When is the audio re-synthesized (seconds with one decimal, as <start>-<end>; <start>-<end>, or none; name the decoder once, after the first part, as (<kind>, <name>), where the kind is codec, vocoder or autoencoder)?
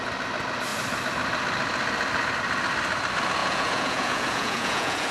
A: 3.4-5.1 (vocoder, Vocos)